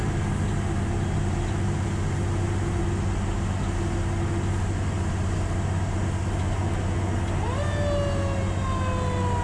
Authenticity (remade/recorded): recorded